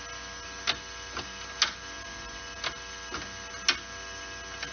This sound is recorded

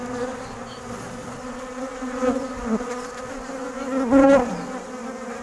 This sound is recorded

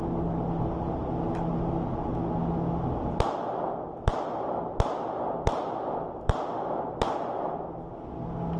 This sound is recorded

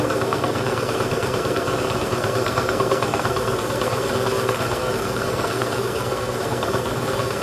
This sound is remade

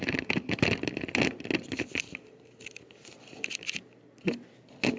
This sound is recorded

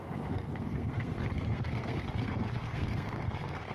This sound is remade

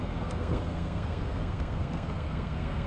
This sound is remade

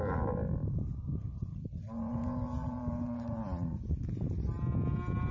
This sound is recorded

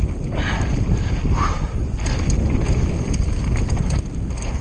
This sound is recorded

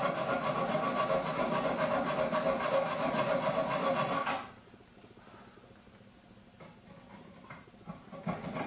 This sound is recorded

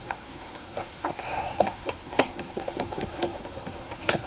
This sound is remade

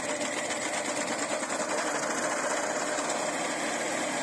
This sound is recorded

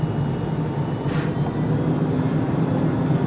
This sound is recorded